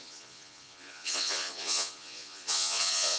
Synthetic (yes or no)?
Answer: yes